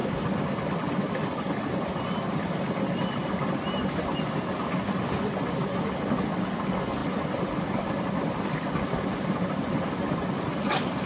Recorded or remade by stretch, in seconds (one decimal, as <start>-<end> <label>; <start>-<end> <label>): 0.0-11.1 recorded